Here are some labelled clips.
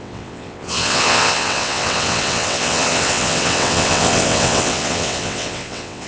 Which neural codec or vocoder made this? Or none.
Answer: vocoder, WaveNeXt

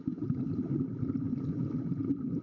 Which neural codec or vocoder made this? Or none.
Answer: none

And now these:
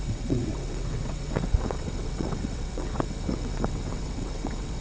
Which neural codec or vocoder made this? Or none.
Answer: vocoder, WaveNeXt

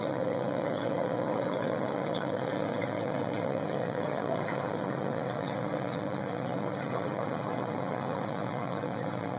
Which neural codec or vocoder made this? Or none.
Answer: vocoder, WaveNeXt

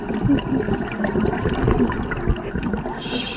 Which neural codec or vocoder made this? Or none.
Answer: none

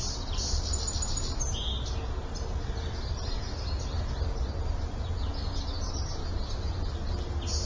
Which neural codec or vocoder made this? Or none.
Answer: none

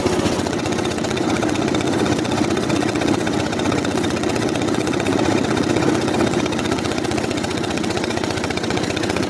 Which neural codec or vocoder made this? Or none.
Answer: vocoder, WaveNeXt